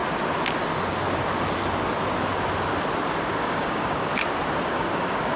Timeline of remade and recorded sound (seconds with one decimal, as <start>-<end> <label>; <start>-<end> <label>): 0.0-3.2 recorded; 3.2-4.1 remade; 4.1-4.7 recorded; 4.7-5.4 remade